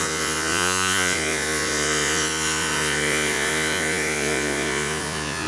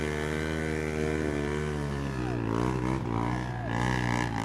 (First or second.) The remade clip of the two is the first